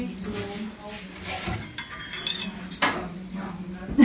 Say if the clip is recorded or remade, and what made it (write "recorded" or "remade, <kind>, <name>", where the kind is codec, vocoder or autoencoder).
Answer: recorded